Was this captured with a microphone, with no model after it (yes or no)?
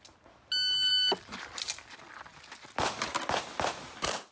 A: yes